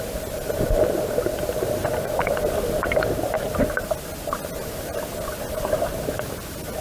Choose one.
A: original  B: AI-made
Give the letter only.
A